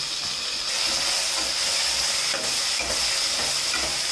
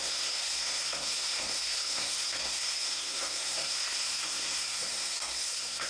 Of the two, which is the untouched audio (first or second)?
first